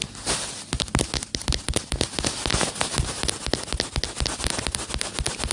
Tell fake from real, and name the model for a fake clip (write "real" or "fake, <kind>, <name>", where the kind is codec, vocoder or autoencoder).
real